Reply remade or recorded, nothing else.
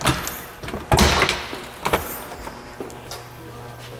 recorded